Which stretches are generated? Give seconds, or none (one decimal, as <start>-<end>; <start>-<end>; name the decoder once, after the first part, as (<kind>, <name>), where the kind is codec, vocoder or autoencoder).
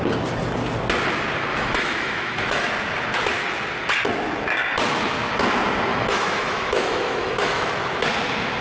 1.5-2.7 (autoencoder, DAC-VAE); 5.9-7.7